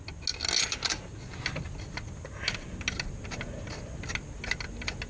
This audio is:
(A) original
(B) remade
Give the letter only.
A